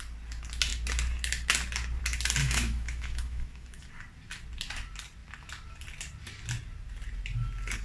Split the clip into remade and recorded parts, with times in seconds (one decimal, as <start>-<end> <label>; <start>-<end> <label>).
0.0-2.4 recorded; 2.4-3.8 remade; 3.8-7.8 recorded